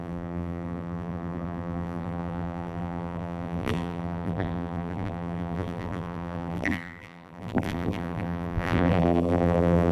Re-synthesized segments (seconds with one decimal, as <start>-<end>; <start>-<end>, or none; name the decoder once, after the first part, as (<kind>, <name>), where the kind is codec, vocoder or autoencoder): 0.0-9.9 (vocoder, BigVGAN v2)